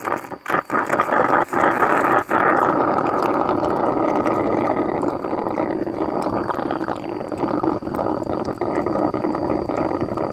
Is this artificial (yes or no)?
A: no